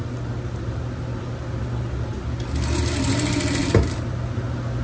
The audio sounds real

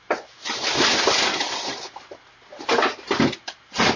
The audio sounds real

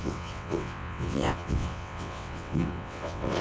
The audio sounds fake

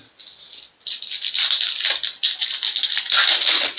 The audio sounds real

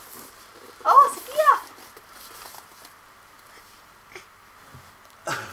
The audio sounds real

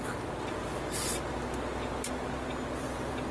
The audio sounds real